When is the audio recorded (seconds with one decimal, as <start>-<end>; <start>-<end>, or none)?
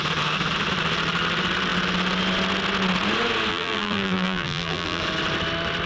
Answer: 0.0-3.5; 5.0-5.9